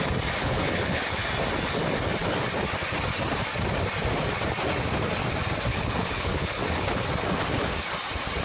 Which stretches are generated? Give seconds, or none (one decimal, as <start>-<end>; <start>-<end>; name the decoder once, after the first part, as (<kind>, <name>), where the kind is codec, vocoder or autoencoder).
0.4-1.2 (codec, HILCodec); 5.7-7.0